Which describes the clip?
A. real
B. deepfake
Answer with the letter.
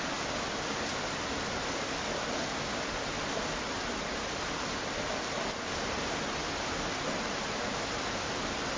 A